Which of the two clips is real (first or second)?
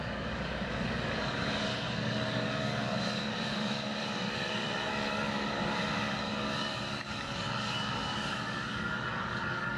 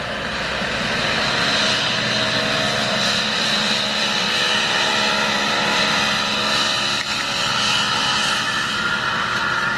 second